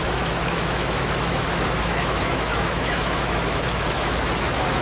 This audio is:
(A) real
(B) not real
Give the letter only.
B